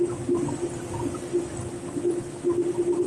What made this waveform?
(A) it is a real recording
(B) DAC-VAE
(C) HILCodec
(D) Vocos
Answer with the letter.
A